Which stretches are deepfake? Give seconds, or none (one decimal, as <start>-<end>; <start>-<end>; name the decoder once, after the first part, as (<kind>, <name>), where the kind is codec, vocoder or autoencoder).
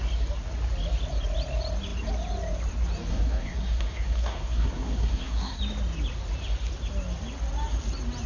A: 3.1-5.6 (codec, SNAC)